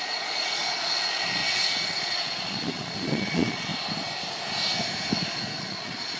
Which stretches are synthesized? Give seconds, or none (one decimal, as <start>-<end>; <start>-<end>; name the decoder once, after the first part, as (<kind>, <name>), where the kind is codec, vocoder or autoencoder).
0.0-1.4 (vocoder, Vocos); 2.0-3.7; 5.6-6.2